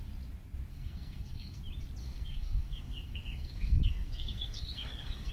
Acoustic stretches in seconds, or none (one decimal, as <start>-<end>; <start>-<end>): 0.0-0.7; 1.6-2.0